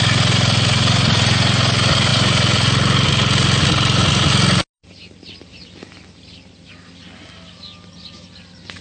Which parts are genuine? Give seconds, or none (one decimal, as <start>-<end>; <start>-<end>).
0.0-8.8